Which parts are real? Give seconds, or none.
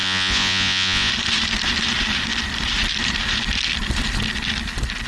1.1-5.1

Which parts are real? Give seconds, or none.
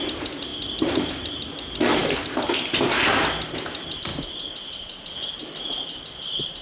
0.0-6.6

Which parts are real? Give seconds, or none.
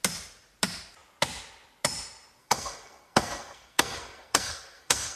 0.0-2.4